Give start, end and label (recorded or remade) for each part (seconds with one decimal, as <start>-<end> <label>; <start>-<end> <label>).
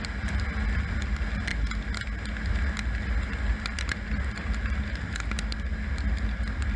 0.0-6.8 recorded